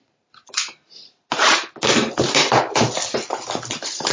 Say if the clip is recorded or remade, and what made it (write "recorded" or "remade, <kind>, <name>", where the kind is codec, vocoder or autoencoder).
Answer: remade, vocoder, BigVGAN v2